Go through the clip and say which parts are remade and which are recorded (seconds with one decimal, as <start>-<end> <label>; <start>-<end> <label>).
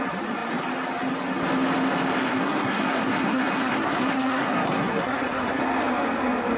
0.0-2.2 recorded; 2.2-5.6 remade; 5.6-6.6 recorded